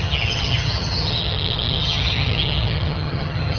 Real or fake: fake